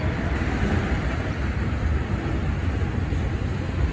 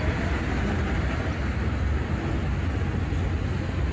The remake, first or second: first